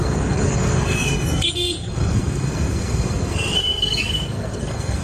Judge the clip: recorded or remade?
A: remade